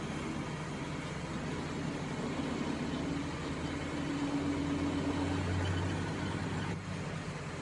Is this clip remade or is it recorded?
recorded